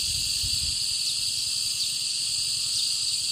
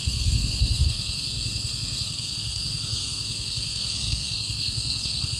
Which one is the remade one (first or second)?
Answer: second